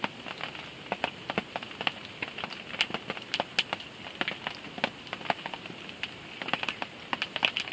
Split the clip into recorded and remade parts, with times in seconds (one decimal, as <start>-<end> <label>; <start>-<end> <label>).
0.0-7.7 recorded